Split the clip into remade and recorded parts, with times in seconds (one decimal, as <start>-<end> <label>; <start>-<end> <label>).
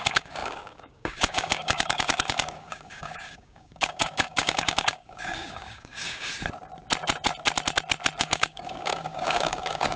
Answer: 0.0-6.3 remade; 6.3-8.2 recorded; 8.2-10.0 remade